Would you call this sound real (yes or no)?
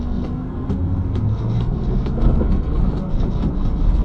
no